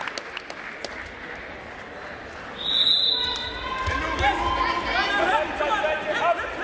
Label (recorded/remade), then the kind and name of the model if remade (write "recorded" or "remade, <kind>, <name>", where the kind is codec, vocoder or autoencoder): recorded